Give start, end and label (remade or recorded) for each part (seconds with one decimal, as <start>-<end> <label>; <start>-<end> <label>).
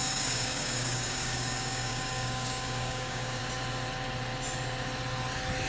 0.0-3.4 remade; 3.4-5.7 recorded